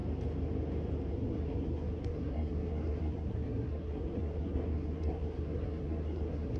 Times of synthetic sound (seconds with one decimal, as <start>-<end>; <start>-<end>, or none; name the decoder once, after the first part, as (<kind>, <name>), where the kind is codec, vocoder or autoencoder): 1.1-6.6 (codec, SNAC)